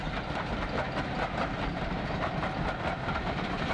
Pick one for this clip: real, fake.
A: real